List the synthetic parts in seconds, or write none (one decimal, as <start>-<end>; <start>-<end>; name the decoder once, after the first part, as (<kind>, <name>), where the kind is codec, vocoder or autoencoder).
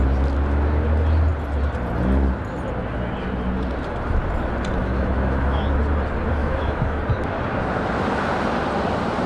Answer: 4.8-5.6 (autoencoder, DAC-VAE); 6.4-7.0